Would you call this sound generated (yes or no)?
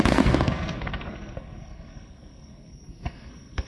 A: yes